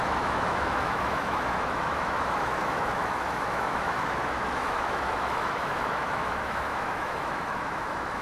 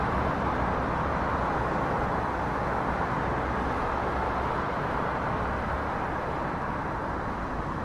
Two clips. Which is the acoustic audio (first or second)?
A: second